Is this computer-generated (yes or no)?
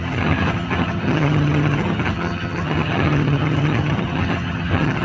yes